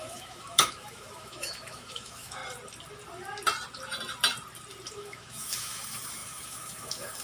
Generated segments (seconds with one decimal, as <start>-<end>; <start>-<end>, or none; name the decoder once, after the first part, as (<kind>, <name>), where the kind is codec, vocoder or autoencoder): 0.0-2.4 (autoencoder, DAC-VAE); 4.9-7.2